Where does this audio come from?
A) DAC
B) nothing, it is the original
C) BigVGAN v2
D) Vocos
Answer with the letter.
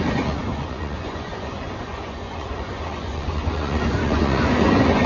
D